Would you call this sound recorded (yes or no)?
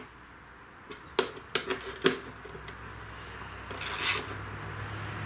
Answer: yes